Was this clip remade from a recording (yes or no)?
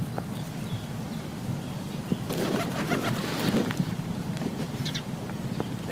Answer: yes